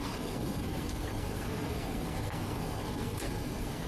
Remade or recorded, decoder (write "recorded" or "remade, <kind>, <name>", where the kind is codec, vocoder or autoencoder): remade, codec, SNAC